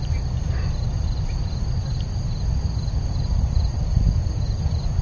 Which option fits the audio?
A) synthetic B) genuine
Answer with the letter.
B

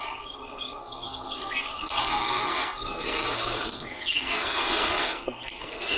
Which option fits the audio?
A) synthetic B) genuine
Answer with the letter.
A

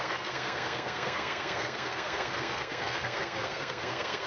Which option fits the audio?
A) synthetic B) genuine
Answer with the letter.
A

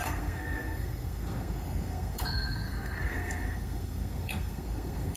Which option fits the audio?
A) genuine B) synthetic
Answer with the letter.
B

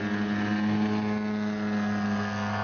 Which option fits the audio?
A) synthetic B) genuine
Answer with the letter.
B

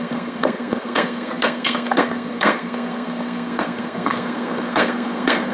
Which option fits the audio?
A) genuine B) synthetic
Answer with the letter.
B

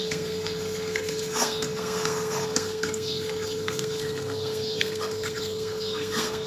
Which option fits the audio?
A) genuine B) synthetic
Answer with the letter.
B